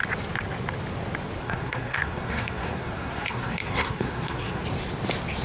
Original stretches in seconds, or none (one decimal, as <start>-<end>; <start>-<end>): 0.0-1.4; 4.6-5.4